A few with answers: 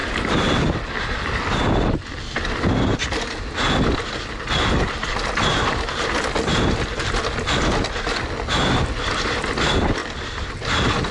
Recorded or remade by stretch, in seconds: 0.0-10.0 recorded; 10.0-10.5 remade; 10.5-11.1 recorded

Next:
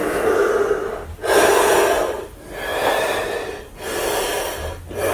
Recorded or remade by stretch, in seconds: 0.0-0.5 remade; 0.5-5.1 recorded

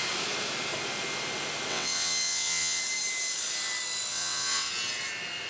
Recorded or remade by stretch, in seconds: 0.0-1.7 recorded; 1.7-2.8 remade; 2.8-4.1 recorded; 4.1-4.7 remade; 4.7-5.5 recorded

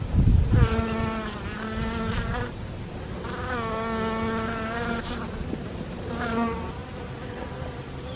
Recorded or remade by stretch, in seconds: 0.0-8.2 recorded